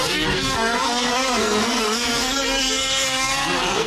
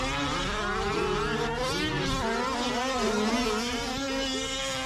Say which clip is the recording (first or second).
second